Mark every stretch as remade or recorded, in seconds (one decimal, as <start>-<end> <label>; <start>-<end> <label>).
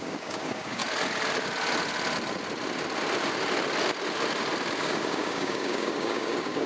0.0-0.8 remade; 0.8-4.8 recorded; 4.8-6.7 remade